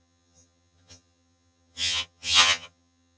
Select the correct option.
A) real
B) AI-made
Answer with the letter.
B